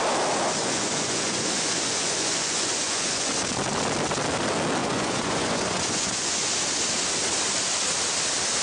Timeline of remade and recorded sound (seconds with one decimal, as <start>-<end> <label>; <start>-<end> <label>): 0.0-0.6 recorded; 0.6-3.3 remade; 3.3-4.8 recorded; 4.8-6.5 remade; 6.5-8.6 recorded